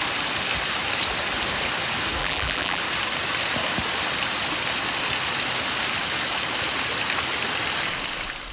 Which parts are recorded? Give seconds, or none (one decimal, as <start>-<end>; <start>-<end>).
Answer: 0.0-2.2; 2.8-8.5